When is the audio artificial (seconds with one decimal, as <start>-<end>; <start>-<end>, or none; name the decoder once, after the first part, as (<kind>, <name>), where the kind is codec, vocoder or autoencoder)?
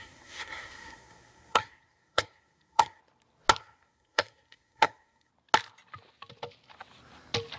0.0-3.0 (codec, SNAC); 3.6-5.3